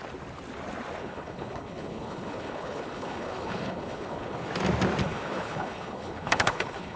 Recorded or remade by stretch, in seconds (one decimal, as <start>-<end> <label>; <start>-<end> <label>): 0.0-1.0 recorded; 1.0-4.5 remade; 4.5-5.0 recorded; 5.0-7.0 remade